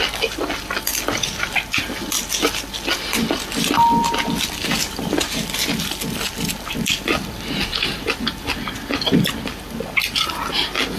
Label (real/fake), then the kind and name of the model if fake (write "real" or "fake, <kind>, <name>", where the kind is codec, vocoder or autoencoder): real